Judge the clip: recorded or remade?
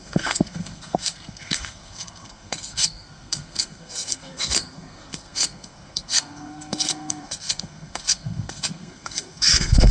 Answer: remade